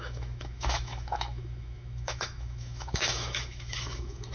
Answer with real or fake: fake